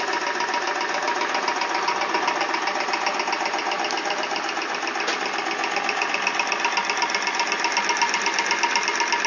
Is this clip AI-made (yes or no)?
no